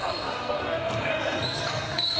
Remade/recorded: remade